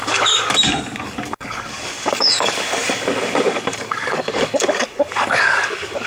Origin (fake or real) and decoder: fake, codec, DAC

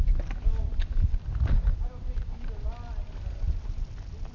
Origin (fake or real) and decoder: real